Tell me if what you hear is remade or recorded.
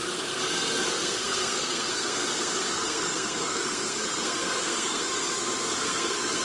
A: remade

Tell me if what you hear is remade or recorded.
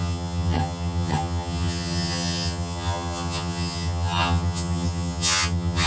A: remade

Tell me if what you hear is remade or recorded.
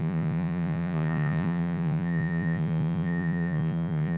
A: remade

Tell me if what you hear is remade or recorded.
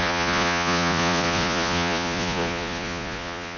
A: remade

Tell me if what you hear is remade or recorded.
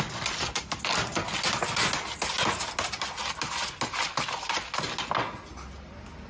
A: recorded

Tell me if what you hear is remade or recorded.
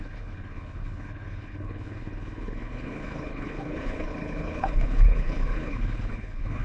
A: remade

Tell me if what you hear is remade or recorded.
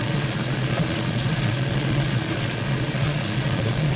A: remade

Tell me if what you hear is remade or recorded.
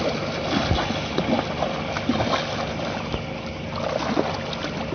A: recorded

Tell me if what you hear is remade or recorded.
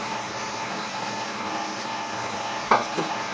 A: remade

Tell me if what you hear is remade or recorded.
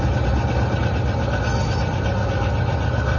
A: recorded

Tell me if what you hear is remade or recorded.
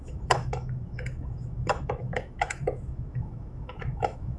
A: remade